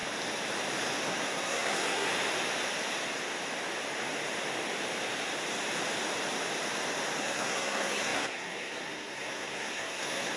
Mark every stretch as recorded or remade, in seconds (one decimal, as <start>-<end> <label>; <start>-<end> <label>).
0.0-1.1 recorded; 1.1-2.1 remade; 2.1-7.2 recorded; 7.2-10.4 remade